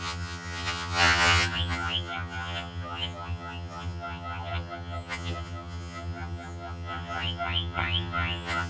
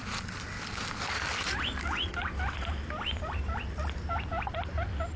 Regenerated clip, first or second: first